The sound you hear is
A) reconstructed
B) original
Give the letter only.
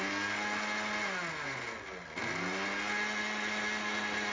B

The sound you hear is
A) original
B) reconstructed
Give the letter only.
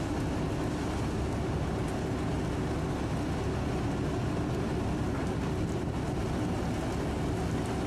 A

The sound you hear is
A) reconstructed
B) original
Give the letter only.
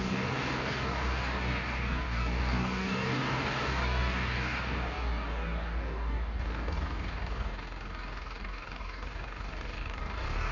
A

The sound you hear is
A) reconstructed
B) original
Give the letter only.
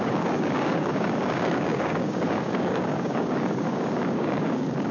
A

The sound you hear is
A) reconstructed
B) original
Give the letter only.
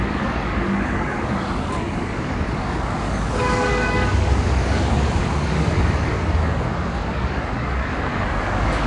A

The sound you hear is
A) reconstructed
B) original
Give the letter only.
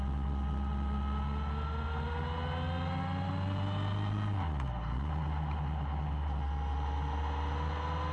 B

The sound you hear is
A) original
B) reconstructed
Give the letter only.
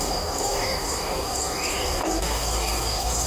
B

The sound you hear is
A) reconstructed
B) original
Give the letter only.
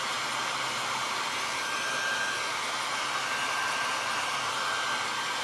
B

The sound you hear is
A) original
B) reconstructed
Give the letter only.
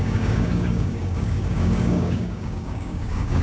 B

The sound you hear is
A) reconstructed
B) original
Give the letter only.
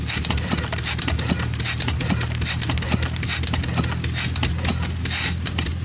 B